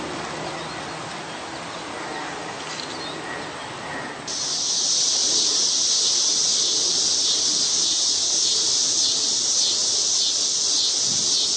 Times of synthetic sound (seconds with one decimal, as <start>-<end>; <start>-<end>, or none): none